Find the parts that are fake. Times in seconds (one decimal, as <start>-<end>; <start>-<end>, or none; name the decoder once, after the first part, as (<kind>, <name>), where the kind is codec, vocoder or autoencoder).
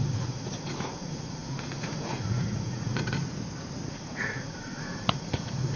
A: 0.0-3.2 (vocoder, Vocos); 3.9-5.8